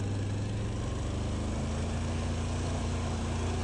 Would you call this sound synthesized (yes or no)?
no